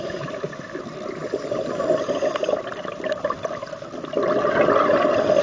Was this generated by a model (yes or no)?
no